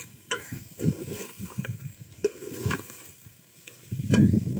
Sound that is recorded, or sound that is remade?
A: remade